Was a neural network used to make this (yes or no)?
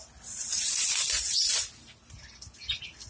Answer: no